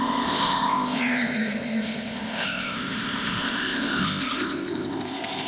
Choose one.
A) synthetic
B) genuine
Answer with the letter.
A